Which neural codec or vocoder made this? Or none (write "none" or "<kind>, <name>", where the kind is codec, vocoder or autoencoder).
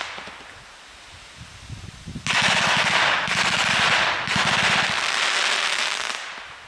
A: none